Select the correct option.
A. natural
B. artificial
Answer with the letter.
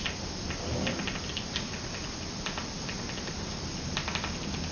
A